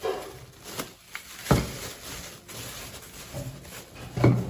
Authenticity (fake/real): real